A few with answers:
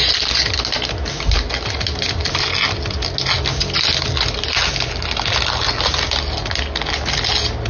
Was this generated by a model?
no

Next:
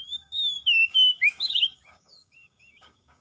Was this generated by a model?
yes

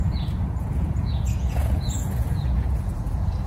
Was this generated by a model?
yes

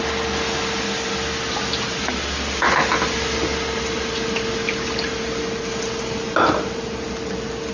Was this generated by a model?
no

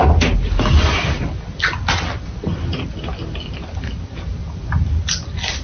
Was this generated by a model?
no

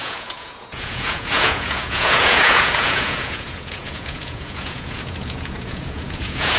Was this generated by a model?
yes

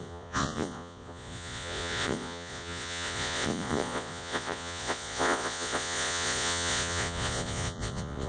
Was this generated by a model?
yes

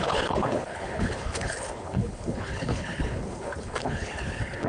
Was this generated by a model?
yes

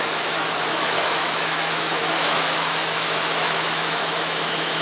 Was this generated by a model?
yes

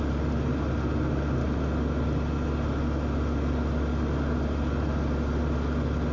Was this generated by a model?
no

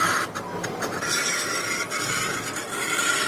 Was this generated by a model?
no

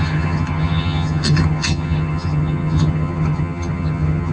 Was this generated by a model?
yes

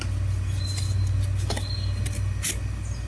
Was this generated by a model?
no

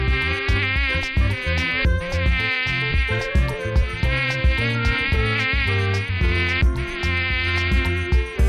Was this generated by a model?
yes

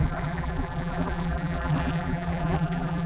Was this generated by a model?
yes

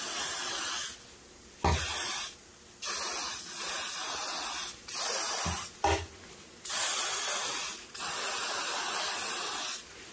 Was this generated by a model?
no